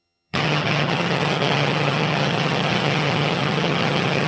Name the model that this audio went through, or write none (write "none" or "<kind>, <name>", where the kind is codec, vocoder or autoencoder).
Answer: vocoder, HiFi-GAN